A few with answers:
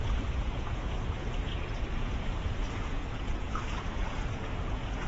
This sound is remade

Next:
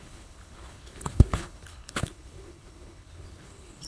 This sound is remade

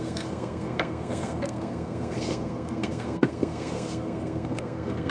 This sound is remade